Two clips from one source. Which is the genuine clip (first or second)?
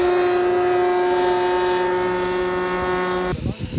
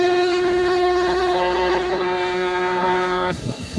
first